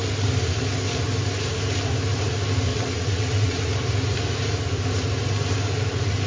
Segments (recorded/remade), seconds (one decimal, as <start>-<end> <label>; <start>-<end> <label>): 0.0-2.7 recorded; 2.7-3.6 remade; 3.6-6.3 recorded